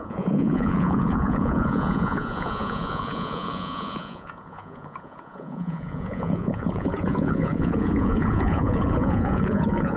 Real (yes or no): no